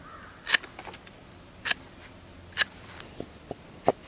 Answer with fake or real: real